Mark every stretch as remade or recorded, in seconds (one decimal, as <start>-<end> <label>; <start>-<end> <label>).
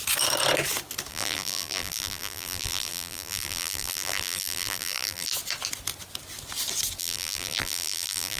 0.0-1.1 recorded; 1.1-5.3 remade; 5.3-7.0 recorded; 7.0-8.4 remade